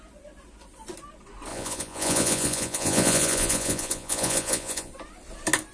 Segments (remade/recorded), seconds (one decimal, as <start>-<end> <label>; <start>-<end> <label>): 0.0-1.5 recorded; 1.5-4.9 remade; 4.9-5.7 recorded